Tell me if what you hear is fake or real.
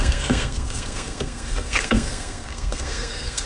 fake